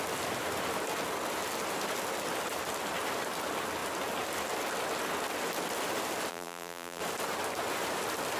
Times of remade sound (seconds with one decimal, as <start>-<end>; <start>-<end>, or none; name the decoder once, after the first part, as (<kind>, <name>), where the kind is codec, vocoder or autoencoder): 6.3-7.0 (vocoder, BigVGAN v2)

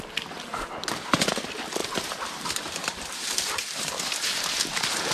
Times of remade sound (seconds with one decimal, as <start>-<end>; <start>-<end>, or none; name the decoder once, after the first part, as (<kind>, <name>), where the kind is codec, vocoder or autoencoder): 1.8-4.6 (vocoder, BigVGAN v2)